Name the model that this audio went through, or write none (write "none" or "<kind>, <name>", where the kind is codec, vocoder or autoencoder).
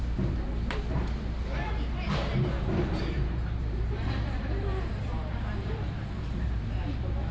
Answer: vocoder, BigVGAN v2